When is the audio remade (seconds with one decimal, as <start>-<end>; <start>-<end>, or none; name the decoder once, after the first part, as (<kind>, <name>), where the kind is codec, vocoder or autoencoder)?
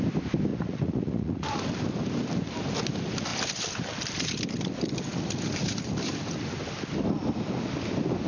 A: 0.5-1.6 (vocoder, Vocos)